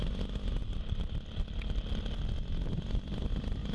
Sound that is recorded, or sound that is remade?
recorded